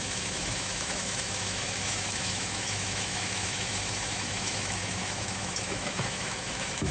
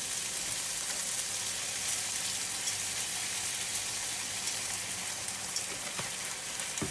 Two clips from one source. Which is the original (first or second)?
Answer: second